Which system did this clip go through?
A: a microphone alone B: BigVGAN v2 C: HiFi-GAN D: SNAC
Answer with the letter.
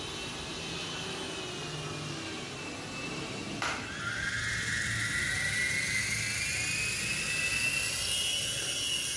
A